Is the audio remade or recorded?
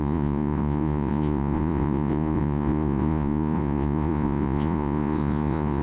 remade